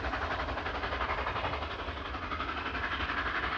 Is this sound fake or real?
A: real